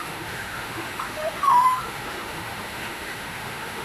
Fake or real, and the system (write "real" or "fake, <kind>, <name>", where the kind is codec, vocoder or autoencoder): fake, autoencoder, DAC-VAE